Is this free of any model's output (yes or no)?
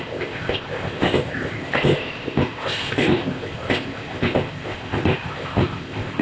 no